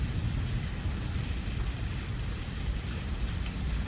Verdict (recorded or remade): recorded